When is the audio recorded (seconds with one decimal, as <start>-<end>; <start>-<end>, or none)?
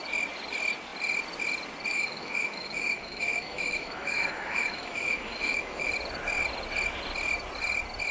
0.0-1.9; 5.9-8.1